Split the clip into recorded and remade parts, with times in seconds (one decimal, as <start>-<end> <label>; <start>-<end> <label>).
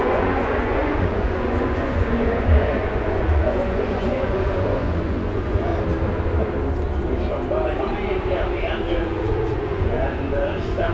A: 0.0-5.7 remade; 5.7-8.9 recorded; 8.9-10.9 remade